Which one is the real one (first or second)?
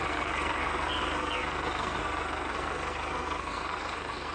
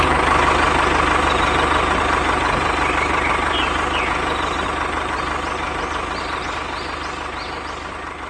second